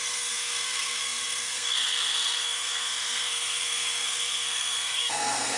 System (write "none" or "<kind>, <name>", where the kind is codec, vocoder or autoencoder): codec, SNAC